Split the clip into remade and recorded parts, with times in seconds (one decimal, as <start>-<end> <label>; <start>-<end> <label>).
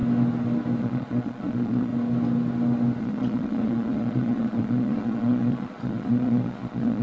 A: 0.0-0.8 recorded; 0.8-1.9 remade; 1.9-3.0 recorded; 3.0-7.0 remade